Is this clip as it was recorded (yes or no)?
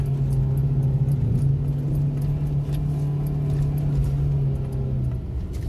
yes